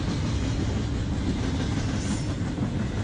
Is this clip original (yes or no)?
yes